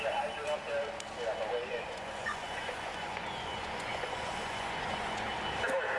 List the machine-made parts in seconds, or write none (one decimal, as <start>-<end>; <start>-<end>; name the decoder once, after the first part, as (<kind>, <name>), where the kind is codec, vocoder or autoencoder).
1.7-5.3 (vocoder, Vocos)